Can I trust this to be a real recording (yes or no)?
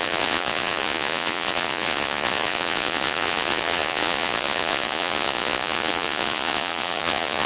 no